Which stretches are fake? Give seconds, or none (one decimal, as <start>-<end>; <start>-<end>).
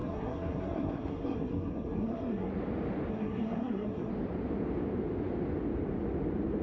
0.0-2.5; 3.1-4.1